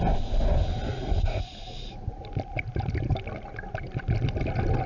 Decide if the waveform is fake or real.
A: real